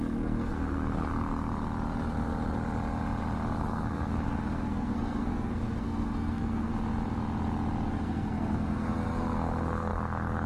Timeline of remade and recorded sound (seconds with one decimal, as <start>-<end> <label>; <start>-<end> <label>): 0.0-1.1 remade; 1.1-3.6 recorded; 3.6-6.7 remade; 6.7-7.9 recorded; 7.9-10.5 remade